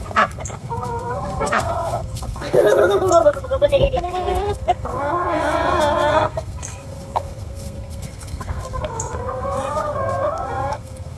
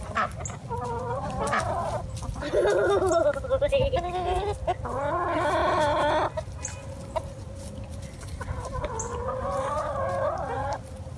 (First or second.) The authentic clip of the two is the second